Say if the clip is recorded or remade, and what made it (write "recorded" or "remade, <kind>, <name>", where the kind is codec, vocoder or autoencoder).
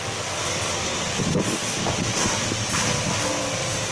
recorded